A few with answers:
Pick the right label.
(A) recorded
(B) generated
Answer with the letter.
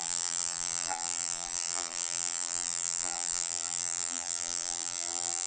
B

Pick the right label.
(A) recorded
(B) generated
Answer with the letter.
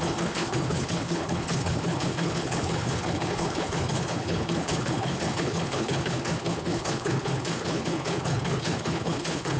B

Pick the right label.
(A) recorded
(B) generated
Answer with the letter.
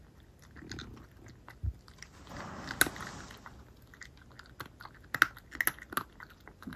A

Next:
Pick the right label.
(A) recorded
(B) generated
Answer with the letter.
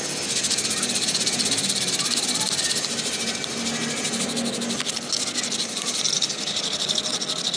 A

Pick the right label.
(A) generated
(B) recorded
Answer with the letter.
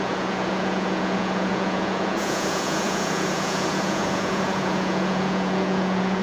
A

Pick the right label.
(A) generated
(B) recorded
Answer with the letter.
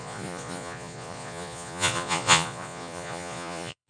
A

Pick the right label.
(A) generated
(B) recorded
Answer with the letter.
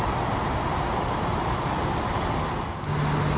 B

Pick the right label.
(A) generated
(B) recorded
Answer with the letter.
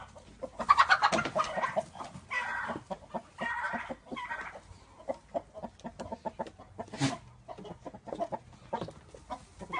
B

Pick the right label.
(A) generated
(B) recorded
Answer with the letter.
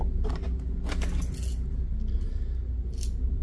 B